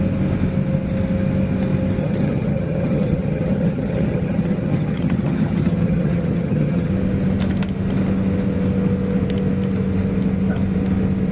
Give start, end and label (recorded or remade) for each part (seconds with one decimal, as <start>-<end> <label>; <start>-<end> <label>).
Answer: 0.0-2.0 recorded; 2.0-6.9 remade; 6.9-11.3 recorded